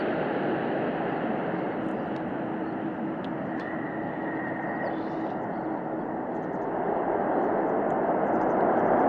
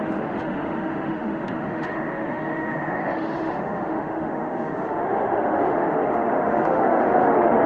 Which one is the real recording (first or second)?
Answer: first